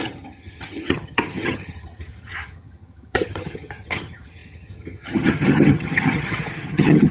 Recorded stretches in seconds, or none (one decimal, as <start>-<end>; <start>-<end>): none